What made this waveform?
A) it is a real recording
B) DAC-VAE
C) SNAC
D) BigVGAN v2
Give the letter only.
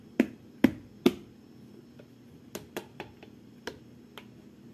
A